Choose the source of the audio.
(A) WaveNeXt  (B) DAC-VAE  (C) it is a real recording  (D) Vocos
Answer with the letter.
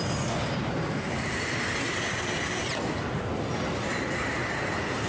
C